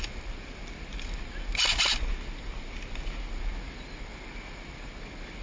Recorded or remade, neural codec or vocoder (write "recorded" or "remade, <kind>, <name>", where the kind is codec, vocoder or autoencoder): recorded